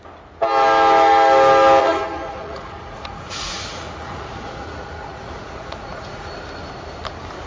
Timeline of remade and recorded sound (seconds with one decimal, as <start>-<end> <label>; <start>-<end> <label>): 0.0-1.8 recorded; 1.8-6.3 remade; 6.3-7.5 recorded